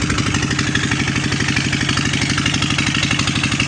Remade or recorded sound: recorded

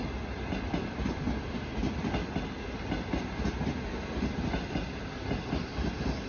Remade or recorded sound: recorded